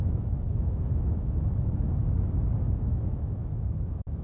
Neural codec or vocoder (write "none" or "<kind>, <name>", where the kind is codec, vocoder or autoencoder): autoencoder, DAC-VAE